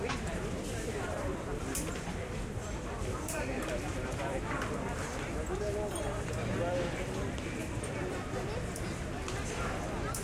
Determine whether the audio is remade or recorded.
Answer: remade